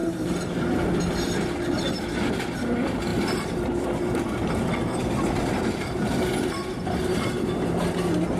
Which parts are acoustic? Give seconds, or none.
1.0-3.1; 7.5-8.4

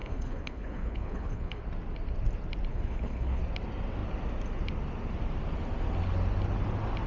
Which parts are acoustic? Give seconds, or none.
1.6-2.7; 3.4-7.1